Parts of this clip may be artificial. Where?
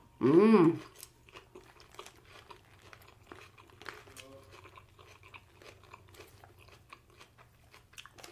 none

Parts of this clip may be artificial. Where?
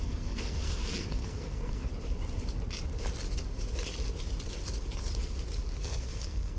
0.0-1.9; 5.8-6.6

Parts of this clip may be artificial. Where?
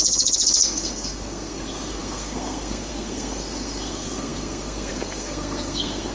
0.0-6.1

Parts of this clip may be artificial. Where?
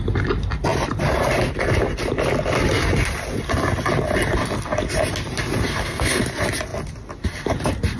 5.7-6.2